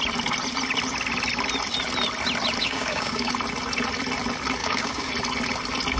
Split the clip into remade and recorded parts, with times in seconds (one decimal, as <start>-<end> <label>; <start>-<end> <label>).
0.0-2.6 recorded; 2.6-3.3 remade; 3.3-4.6 recorded; 4.6-5.1 remade; 5.1-6.0 recorded